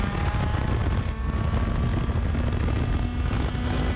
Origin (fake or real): real